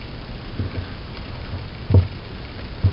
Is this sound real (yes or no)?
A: yes